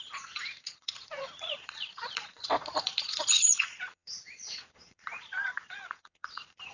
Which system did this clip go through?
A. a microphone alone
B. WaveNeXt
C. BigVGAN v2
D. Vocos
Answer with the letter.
D